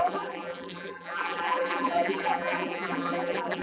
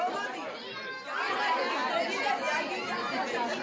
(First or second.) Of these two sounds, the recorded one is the second